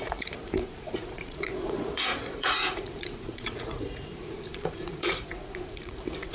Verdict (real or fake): fake